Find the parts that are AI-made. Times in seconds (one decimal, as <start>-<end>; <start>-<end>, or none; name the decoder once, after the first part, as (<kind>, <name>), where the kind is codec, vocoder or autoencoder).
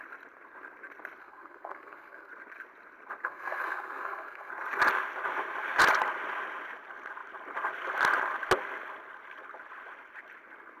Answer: 1.2-2.3 (codec, SNAC); 3.2-4.5